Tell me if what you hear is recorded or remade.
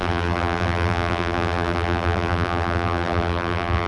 remade